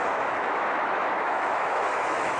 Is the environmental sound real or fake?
fake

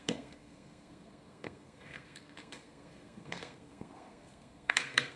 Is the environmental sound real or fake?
fake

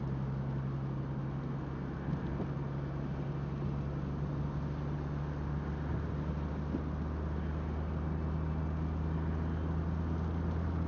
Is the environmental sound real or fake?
real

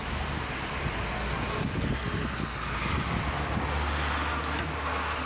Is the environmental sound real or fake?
real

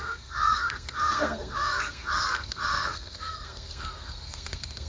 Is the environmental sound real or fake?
fake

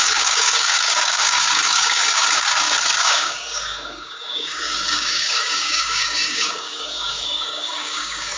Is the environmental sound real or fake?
fake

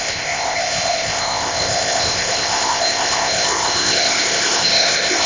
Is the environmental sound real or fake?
fake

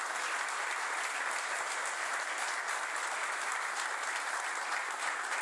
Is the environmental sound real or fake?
real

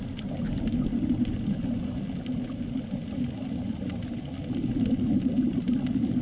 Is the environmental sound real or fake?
real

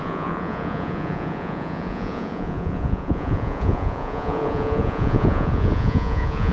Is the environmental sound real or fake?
fake